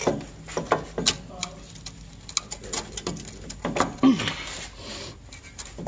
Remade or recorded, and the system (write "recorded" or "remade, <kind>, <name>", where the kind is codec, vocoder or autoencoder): recorded